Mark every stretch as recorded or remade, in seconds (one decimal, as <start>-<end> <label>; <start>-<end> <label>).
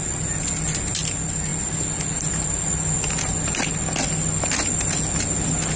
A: 0.0-5.8 recorded